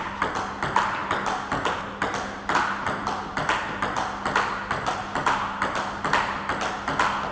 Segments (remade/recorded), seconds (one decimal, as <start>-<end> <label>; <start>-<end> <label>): 0.0-7.3 recorded